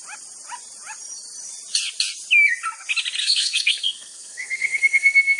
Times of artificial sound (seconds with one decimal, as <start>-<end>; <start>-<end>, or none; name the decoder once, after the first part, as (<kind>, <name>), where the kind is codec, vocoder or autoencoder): 3.2-5.4 (codec, SNAC)